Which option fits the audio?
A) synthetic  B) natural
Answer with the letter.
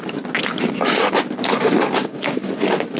B